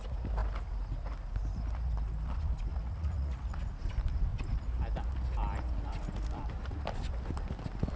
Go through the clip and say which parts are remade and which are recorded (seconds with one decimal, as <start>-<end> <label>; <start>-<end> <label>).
0.0-2.7 recorded; 2.7-3.8 remade; 3.8-8.0 recorded

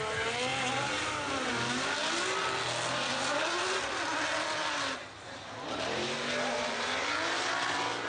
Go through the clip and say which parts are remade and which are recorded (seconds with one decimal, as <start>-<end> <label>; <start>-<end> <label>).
0.0-8.1 recorded

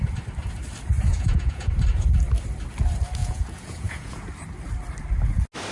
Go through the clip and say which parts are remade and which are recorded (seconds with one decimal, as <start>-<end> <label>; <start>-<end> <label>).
0.0-1.1 recorded; 1.1-1.7 remade; 1.7-3.2 recorded; 3.2-4.3 remade; 4.3-5.7 recorded

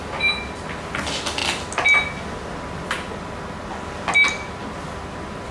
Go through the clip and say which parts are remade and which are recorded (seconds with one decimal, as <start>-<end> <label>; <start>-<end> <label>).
0.0-5.5 recorded